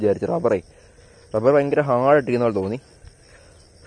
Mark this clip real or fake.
real